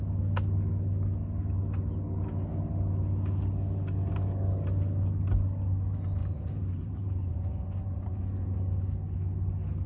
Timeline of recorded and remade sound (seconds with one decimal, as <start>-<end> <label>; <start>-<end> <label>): 0.0-6.2 recorded; 6.2-8.2 remade; 8.2-9.9 recorded